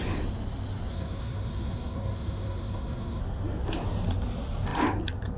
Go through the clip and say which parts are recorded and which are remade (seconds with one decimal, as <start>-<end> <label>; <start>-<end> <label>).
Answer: 0.0-0.9 recorded; 0.9-3.2 remade; 3.2-5.4 recorded